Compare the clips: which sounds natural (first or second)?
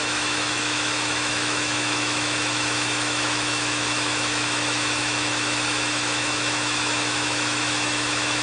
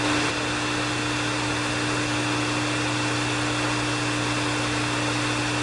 second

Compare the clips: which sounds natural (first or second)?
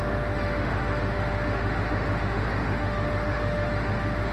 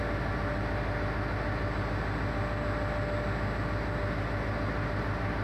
second